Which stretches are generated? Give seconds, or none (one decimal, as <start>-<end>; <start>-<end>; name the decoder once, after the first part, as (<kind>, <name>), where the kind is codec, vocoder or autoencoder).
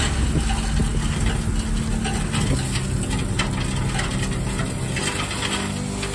none